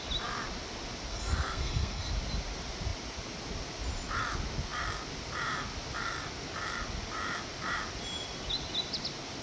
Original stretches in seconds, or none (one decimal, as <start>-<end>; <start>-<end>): 0.0-1.1; 2.1-9.4

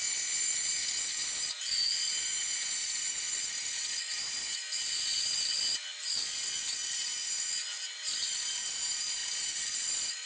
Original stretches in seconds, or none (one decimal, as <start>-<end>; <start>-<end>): 0.0-10.3

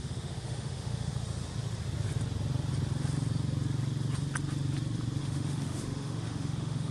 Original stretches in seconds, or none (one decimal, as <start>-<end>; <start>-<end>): 1.1-5.2

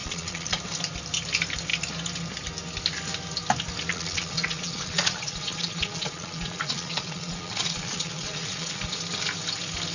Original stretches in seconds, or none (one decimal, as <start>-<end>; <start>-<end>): 0.6-3.9; 9.0-9.9

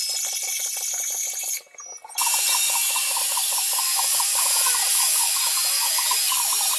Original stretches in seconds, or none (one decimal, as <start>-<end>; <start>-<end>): 0.0-1.8

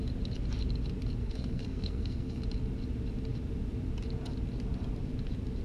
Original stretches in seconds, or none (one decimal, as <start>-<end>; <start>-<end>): 0.0-1.2; 2.4-5.6

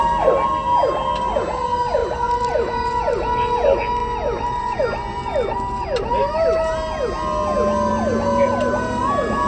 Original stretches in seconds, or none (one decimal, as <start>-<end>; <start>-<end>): 0.0-2.0; 2.7-9.5